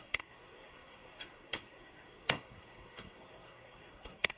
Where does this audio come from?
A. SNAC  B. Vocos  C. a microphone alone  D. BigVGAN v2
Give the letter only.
A